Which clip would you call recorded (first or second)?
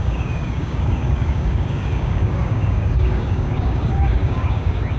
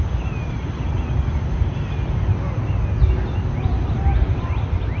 second